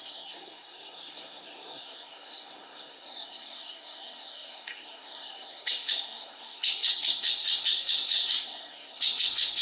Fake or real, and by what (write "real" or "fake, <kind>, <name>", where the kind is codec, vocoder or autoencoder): fake, codec, SNAC